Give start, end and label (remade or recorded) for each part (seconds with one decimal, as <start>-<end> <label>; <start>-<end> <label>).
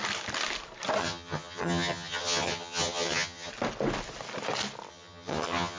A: 0.0-1.0 recorded; 1.0-3.5 remade; 3.5-4.9 recorded; 4.9-5.8 remade